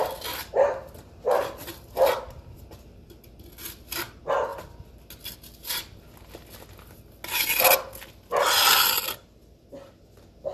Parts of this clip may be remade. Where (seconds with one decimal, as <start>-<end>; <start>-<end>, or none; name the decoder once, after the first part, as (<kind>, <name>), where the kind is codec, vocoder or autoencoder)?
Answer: none